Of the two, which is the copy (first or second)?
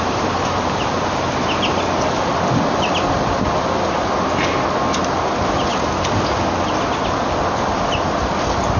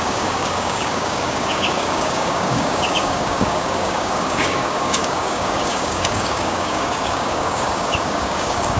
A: second